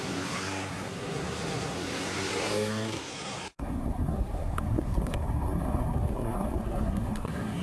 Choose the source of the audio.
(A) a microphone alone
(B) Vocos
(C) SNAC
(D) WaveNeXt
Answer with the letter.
C